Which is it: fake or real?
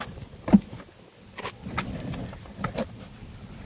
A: real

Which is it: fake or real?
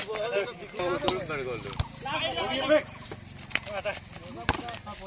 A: real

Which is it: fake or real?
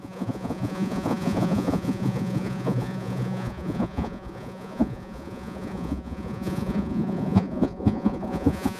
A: fake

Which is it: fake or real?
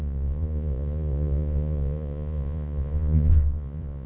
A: fake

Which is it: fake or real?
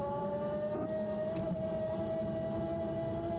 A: real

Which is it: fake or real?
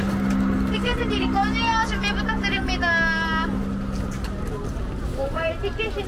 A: real